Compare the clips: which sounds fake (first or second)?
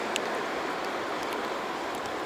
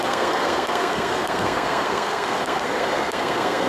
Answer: second